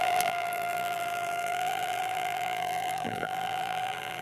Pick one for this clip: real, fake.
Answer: fake